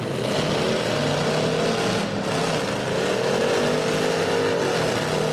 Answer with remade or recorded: recorded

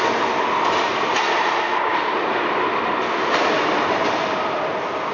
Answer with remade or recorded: recorded